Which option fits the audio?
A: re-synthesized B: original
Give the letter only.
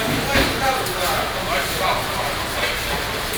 B